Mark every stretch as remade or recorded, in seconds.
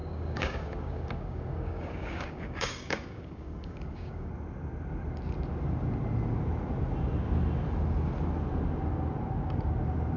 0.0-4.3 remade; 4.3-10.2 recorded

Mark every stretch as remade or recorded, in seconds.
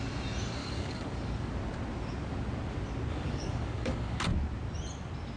0.0-0.6 recorded; 0.6-1.5 remade; 1.5-3.1 recorded; 3.1-4.2 remade; 4.2-5.4 recorded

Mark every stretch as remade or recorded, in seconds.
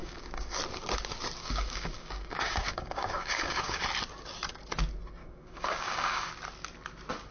0.0-0.6 remade; 0.6-1.4 recorded; 1.4-3.8 remade; 3.8-5.2 recorded; 5.2-6.3 remade; 6.3-7.3 recorded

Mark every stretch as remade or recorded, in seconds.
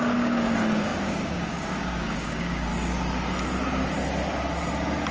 0.0-2.7 remade; 2.7-5.1 recorded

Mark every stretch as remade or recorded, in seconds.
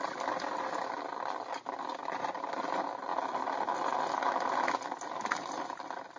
0.0-6.2 recorded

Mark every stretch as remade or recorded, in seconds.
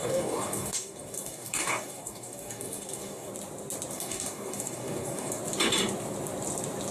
0.0-3.3 remade; 3.3-3.9 recorded; 3.9-5.4 remade; 5.4-6.9 recorded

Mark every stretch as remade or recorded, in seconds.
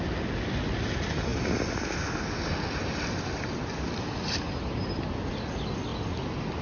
0.0-6.6 recorded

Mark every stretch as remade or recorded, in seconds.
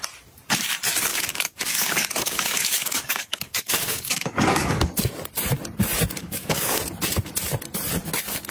0.0-1.1 recorded; 1.1-4.9 remade; 4.9-6.2 recorded; 6.2-6.8 remade; 6.8-8.5 recorded